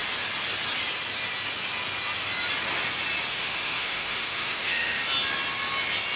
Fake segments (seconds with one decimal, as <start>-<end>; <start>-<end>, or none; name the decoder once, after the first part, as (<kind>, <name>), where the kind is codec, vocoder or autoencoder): 3.3-5.0 (autoencoder, DAC-VAE)